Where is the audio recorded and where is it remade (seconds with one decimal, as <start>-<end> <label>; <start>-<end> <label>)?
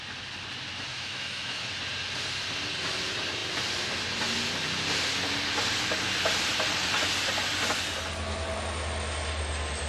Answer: 0.0-0.9 recorded; 0.9-1.7 remade; 1.7-9.9 recorded